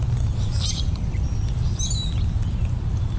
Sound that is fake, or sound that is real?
real